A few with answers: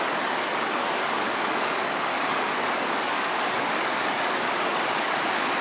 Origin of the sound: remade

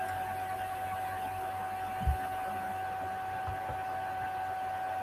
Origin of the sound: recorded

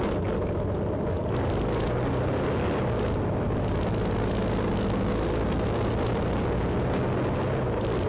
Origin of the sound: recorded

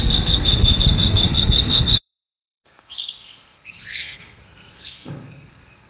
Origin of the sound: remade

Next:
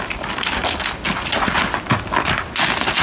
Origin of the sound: recorded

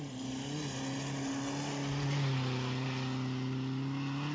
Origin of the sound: recorded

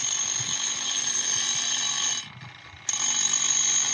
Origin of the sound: recorded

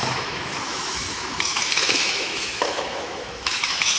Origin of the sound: remade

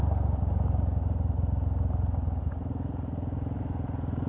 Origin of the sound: recorded